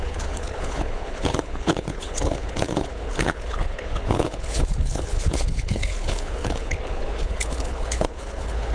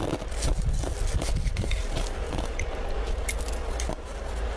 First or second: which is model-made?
first